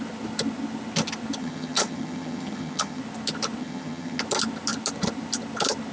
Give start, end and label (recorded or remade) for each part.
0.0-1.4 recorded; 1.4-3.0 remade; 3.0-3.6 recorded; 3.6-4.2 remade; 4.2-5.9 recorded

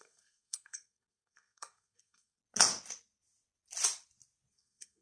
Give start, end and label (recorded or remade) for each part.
0.0-2.4 remade; 2.4-4.5 recorded; 4.5-5.0 remade

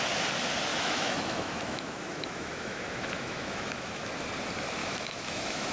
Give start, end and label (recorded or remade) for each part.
0.0-0.7 recorded; 0.7-4.1 remade; 4.1-4.8 recorded; 4.8-5.7 remade